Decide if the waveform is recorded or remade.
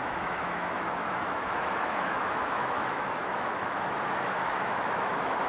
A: remade